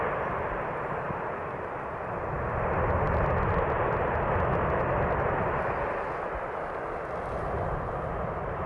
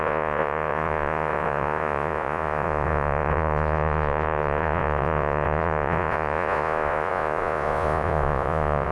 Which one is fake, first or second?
second